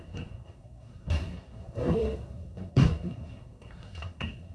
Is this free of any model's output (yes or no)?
no